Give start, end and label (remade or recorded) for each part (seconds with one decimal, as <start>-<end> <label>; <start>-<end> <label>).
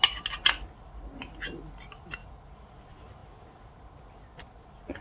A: 0.0-5.0 recorded